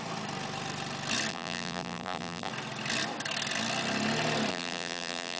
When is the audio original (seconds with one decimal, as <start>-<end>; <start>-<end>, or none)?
0.0-1.3; 2.5-4.5